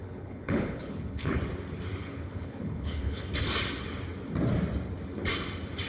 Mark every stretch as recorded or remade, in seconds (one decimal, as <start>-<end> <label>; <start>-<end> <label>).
0.0-1.4 remade; 1.4-2.0 recorded; 2.0-3.3 remade; 3.3-5.9 recorded